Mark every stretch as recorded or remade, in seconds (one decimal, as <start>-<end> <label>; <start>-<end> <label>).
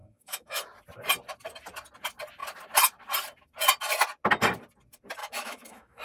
0.0-0.6 remade; 0.6-5.2 recorded; 5.2-6.0 remade